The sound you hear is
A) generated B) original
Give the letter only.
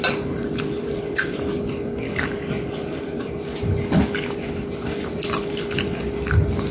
B